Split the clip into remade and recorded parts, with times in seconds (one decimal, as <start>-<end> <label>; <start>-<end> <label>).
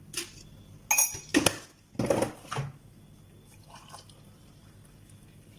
0.0-5.6 recorded